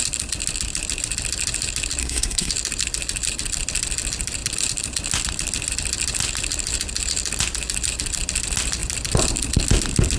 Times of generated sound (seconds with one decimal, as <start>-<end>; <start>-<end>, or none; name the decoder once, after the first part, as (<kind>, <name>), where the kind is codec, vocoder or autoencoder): 2.0-2.5 (codec, SNAC)